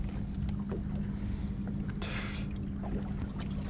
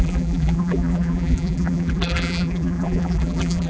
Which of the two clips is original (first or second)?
first